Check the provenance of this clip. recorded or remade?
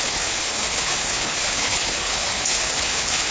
remade